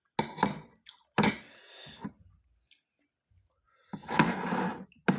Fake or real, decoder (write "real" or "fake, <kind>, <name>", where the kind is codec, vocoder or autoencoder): real